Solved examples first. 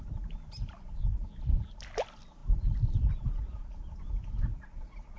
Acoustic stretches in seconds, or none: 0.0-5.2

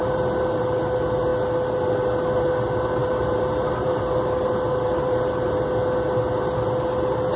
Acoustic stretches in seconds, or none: 0.6-3.0; 4.0-7.4

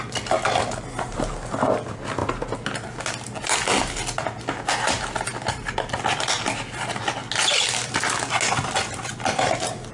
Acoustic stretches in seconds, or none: 0.0-9.9

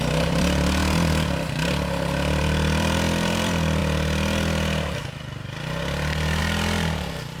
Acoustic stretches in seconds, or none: 0.8-2.4; 3.8-6.4

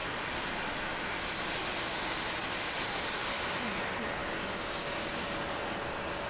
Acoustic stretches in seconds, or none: 0.0-4.2; 5.2-6.3

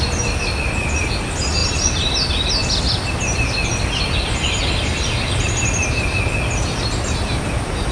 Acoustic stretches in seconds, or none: 0.0-7.9

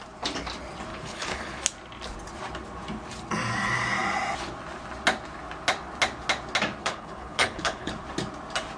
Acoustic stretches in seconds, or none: 0.0-0.9; 1.6-6.8; 7.9-8.8

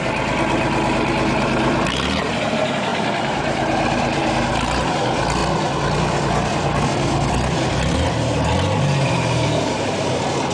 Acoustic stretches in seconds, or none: 5.4-6.8